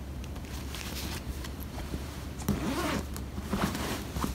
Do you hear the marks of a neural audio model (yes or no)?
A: yes